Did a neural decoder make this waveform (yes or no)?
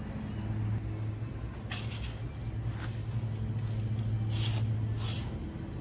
no